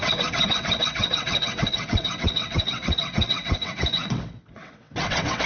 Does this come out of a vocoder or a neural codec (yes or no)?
yes